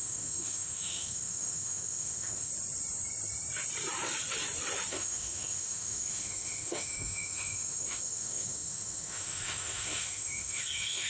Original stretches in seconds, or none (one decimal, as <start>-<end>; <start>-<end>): 2.5-4.9